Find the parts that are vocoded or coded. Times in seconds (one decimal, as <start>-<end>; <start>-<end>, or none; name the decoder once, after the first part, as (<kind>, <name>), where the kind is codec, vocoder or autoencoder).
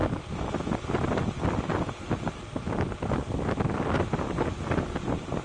none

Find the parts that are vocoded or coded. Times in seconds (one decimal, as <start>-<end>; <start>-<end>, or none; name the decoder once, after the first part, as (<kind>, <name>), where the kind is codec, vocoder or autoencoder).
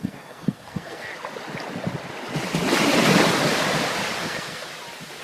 0.0-1.1 (codec, SNAC); 4.2-4.7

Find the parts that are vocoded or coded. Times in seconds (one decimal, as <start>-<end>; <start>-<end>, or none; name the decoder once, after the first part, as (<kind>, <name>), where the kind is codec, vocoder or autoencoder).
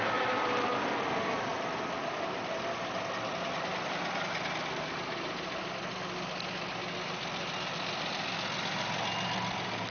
none